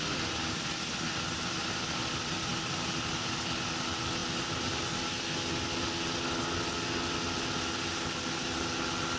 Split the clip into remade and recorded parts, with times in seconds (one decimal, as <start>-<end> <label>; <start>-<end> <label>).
0.0-9.2 recorded